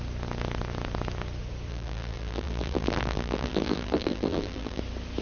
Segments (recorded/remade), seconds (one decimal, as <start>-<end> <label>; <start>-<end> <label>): 0.0-1.7 recorded; 1.7-4.8 remade; 4.8-5.2 recorded